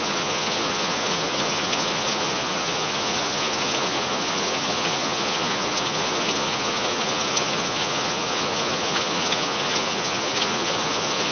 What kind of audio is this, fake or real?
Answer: fake